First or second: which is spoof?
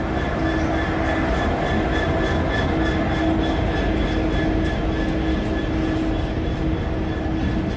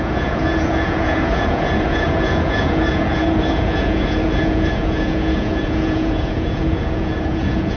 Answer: second